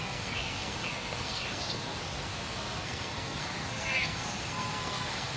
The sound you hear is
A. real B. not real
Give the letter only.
B